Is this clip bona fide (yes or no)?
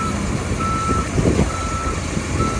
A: yes